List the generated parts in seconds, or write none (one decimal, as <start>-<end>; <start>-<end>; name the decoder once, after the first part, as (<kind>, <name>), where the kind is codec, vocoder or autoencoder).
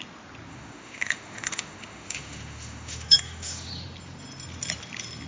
0.5-3.7 (autoencoder, DAC-VAE)